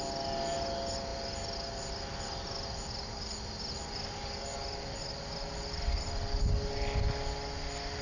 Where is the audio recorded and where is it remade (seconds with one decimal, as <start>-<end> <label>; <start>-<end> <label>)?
0.0-8.0 recorded